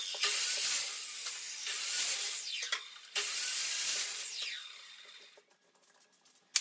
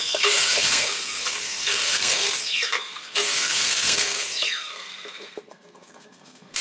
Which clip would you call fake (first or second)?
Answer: second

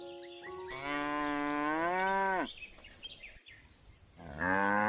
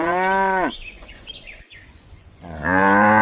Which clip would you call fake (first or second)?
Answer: second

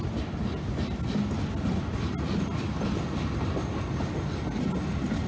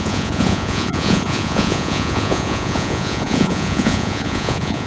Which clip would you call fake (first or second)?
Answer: second